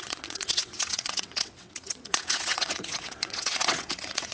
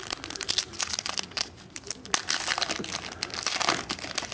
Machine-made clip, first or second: first